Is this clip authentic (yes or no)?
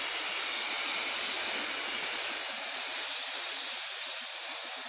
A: yes